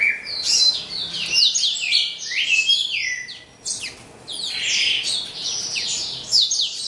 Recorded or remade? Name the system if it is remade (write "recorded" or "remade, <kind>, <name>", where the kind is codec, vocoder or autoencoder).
recorded